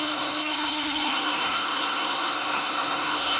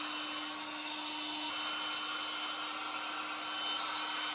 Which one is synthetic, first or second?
first